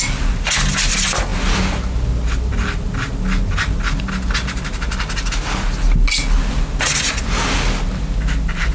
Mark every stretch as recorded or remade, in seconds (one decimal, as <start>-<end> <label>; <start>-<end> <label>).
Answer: 0.0-8.7 recorded